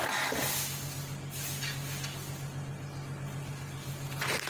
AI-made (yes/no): no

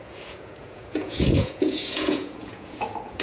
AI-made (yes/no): yes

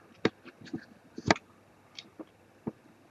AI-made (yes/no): no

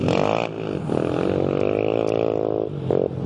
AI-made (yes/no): no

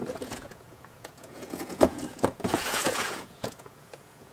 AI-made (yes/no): yes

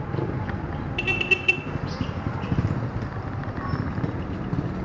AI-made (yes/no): no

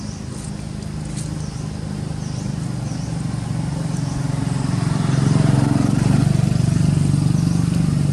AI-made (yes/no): no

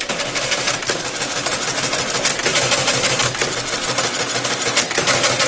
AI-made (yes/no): no